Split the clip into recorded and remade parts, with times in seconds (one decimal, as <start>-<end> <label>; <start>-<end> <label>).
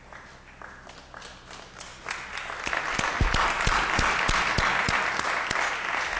0.0-6.2 recorded